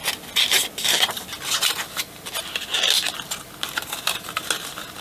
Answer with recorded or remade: recorded